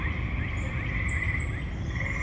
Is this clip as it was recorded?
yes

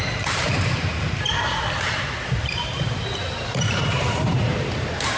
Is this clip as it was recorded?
no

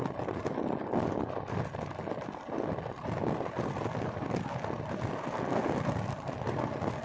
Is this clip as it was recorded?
yes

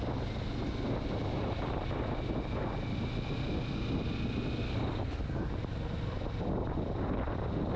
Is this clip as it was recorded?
yes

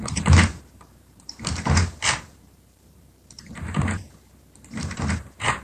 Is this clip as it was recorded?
no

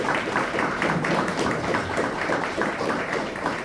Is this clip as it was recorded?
no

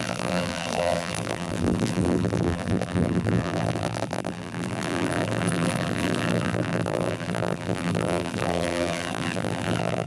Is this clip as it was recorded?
no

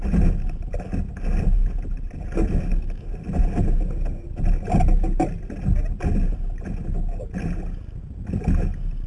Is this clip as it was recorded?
yes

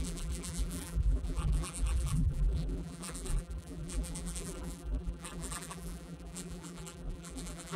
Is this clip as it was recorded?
no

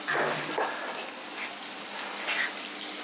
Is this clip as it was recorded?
yes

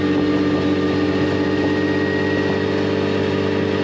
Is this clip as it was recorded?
yes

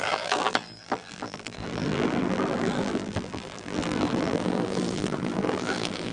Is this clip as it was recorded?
no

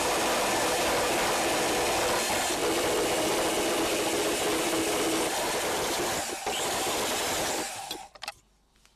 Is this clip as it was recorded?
yes